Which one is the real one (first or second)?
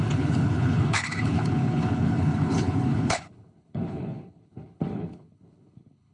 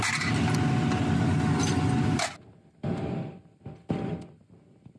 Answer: second